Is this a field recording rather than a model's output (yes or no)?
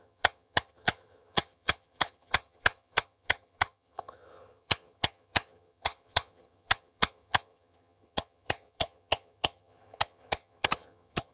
no